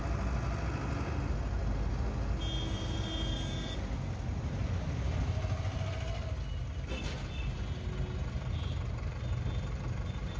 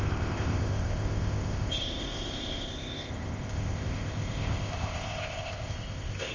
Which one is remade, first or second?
second